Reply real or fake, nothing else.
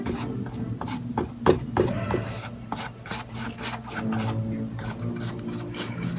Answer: real